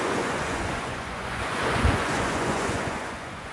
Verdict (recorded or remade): remade